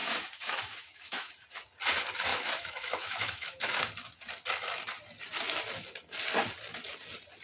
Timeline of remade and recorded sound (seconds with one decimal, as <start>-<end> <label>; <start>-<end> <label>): 0.0-1.3 remade; 1.3-2.3 recorded; 2.3-3.8 remade; 3.8-7.4 recorded